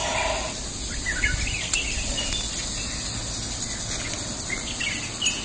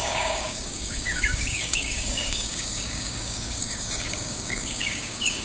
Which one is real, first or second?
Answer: first